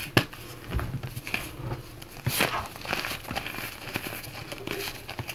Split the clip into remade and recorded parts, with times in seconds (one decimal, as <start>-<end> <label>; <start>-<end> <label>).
0.0-5.3 recorded